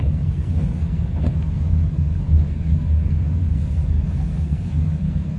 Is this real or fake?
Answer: fake